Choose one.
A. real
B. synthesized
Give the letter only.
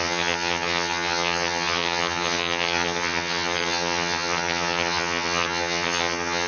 B